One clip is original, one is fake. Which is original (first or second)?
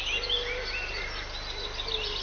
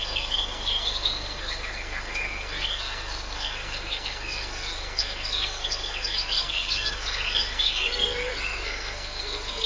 first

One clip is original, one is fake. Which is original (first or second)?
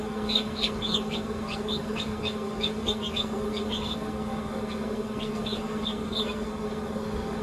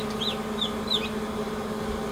second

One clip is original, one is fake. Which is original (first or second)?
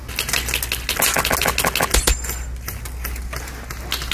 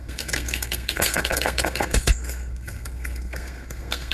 first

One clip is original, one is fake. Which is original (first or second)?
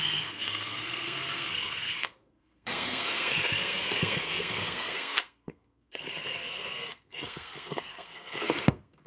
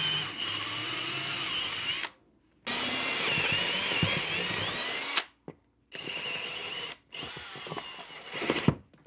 second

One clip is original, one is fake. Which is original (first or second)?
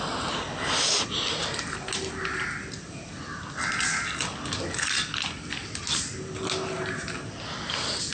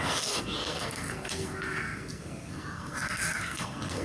first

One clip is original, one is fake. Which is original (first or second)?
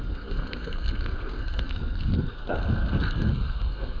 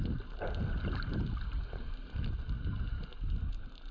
second